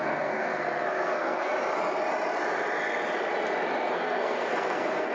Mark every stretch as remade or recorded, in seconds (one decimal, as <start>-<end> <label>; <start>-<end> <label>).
0.0-1.5 remade; 1.5-3.9 recorded; 3.9-5.1 remade